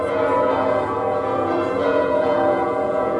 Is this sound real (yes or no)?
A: no